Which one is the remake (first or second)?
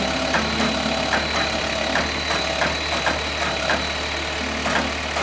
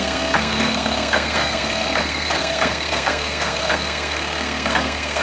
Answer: second